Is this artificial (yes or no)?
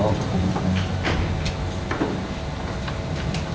no